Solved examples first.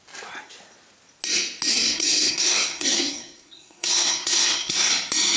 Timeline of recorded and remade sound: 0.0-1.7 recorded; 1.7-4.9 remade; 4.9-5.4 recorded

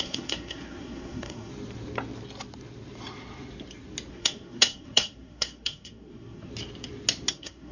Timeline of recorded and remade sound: 0.0-1.5 remade; 1.5-4.1 recorded; 4.1-6.5 remade; 6.5-7.3 recorded; 7.3-7.7 remade

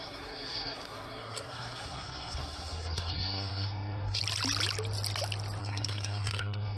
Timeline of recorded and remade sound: 0.0-4.2 remade; 4.2-5.6 recorded; 5.6-6.8 remade

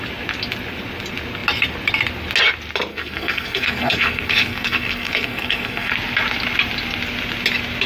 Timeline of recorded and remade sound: 0.0-2.9 recorded; 2.9-5.9 remade; 5.9-7.9 recorded

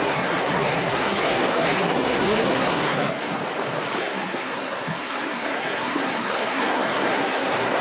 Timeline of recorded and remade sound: 0.0-3.4 remade; 3.4-4.0 recorded; 4.0-7.8 remade

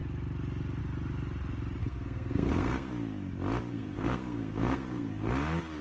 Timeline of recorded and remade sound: 0.0-1.8 recorded; 1.8-2.9 remade; 2.9-3.7 recorded; 3.7-5.3 remade; 5.3-5.8 recorded

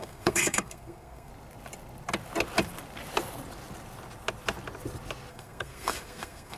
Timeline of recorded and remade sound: 0.0-1.3 remade; 1.3-5.3 recorded; 5.3-6.6 remade